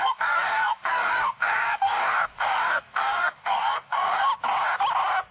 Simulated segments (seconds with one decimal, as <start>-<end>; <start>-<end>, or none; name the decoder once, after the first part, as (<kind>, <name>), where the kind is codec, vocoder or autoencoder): 0.0-4.3 (codec, DAC)